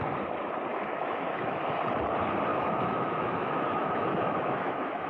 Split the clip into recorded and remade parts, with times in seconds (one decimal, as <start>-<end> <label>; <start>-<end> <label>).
0.0-0.7 recorded; 0.7-1.8 remade; 1.8-2.5 recorded; 2.5-5.1 remade